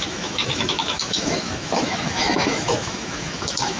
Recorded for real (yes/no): no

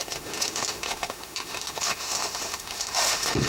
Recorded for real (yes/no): no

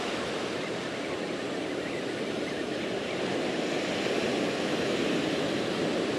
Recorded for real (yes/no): yes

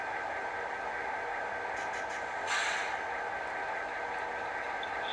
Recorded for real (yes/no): yes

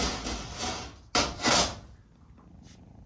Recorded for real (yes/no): yes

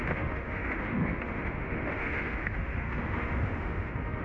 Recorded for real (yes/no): no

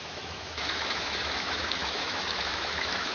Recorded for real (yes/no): no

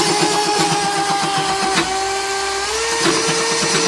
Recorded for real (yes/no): yes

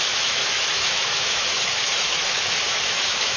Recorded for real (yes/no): no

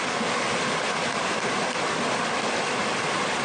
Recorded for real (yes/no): yes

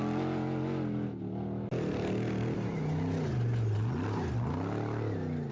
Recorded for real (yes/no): yes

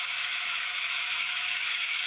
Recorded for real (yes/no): no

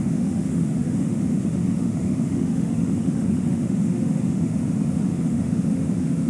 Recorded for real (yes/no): no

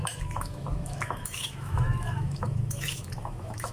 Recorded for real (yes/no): no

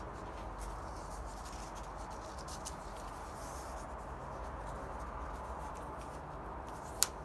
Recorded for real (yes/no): yes